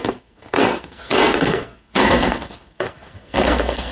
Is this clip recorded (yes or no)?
no